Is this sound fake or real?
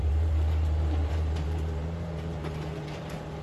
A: fake